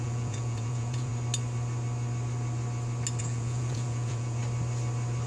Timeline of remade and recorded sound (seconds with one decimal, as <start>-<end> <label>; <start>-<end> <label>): 0.0-1.1 remade; 1.1-3.2 recorded; 3.2-4.4 remade; 4.4-5.3 recorded